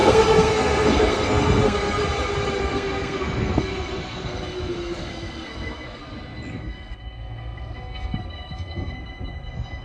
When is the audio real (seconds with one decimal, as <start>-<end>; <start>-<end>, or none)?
2.0-2.6; 6.0-6.5